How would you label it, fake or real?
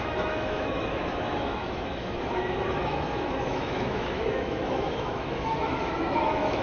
fake